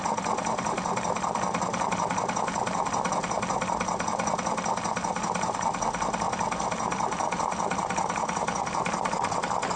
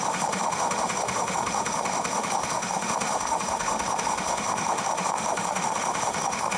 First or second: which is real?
first